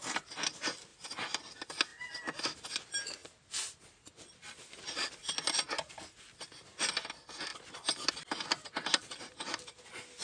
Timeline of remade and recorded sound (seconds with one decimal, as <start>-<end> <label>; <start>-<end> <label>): 0.0-10.2 recorded